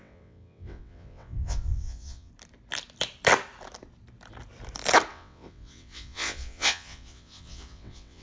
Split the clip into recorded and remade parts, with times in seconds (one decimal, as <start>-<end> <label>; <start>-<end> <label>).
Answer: 0.0-2.3 remade; 2.3-5.1 recorded; 5.1-8.2 remade